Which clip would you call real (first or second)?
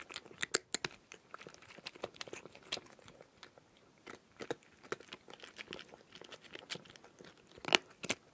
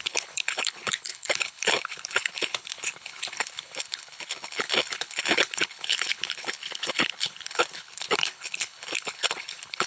first